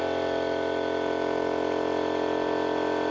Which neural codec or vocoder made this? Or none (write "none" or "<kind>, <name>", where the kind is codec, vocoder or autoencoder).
none